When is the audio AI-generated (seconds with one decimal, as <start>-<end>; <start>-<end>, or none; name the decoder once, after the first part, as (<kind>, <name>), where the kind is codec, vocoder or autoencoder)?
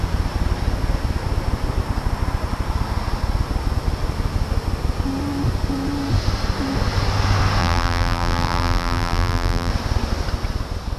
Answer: 7.6-9.7 (vocoder, BigVGAN v2)